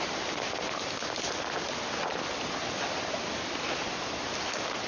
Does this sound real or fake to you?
real